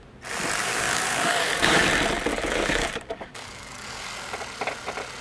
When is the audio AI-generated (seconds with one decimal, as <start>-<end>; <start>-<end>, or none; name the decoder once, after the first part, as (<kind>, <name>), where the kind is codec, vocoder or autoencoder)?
0.6-1.9 (codec, DAC); 2.3-4.0